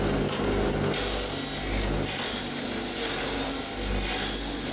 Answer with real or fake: real